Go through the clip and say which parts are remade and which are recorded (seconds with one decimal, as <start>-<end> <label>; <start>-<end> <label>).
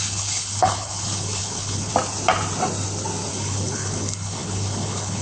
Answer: 0.0-1.9 remade; 1.9-3.3 recorded; 3.3-5.2 remade